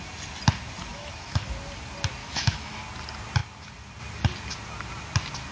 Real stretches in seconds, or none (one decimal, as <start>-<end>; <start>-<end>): 0.0-0.9; 1.5-2.2; 2.8-5.5